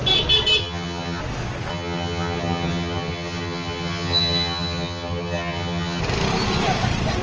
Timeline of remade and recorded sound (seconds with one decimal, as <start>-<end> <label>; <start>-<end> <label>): 0.0-0.6 recorded; 0.6-1.2 remade; 1.2-1.7 recorded; 1.7-6.0 remade; 6.0-7.2 recorded